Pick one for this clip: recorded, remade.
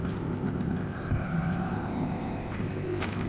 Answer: remade